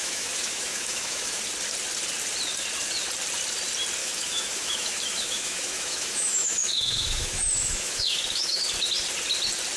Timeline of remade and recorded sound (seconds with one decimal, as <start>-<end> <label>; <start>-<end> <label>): 0.0-1.4 remade; 1.4-4.0 recorded; 4.0-8.6 remade; 8.6-9.8 recorded